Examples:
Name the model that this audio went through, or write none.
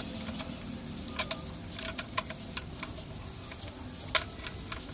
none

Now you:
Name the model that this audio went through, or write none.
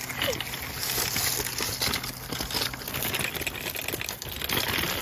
none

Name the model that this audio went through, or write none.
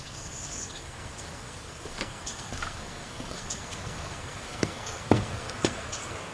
codec, SNAC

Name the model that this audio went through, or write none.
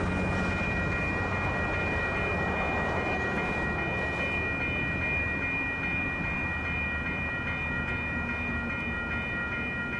none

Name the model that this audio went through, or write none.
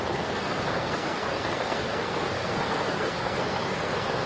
codec, SNAC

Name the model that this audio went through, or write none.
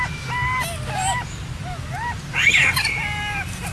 none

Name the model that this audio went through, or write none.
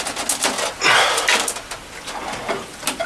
none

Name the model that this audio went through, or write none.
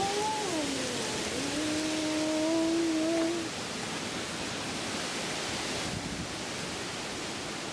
none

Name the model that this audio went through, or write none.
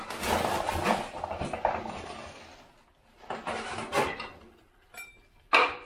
none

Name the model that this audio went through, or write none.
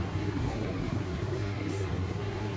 codec, SNAC